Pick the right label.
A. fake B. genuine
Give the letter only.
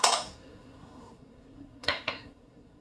A